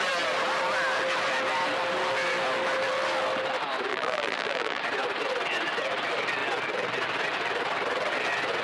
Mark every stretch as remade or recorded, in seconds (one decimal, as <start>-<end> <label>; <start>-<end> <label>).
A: 0.0-3.9 recorded; 3.9-4.8 remade; 4.8-8.6 recorded